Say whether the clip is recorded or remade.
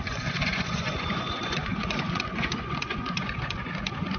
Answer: remade